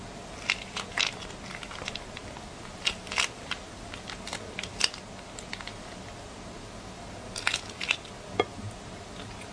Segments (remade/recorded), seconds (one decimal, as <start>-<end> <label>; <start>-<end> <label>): 0.0-9.5 recorded